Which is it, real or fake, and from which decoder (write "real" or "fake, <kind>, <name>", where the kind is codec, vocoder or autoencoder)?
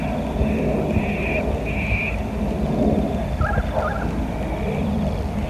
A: real